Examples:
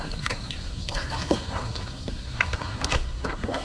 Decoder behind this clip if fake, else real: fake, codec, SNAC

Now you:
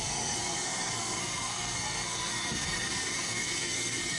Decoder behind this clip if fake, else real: fake, codec, SNAC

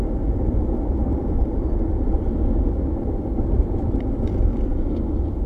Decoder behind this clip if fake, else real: fake, vocoder, BigVGAN v2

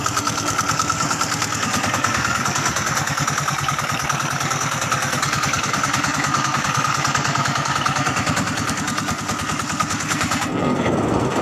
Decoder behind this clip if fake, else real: fake, codec, SNAC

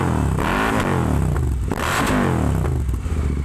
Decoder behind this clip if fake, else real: real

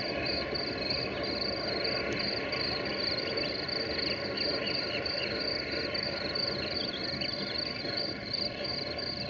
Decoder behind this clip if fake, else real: real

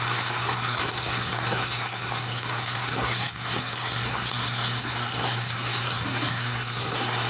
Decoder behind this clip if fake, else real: fake, codec, SNAC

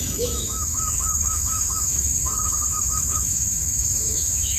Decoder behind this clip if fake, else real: fake, autoencoder, DAC-VAE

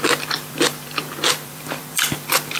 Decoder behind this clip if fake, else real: fake, vocoder, BigVGAN v2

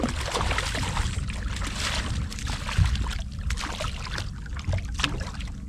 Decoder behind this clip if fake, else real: real